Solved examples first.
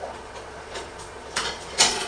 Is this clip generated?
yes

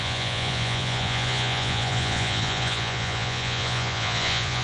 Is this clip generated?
yes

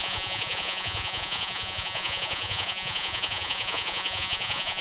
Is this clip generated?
yes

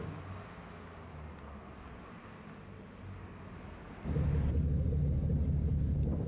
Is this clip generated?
no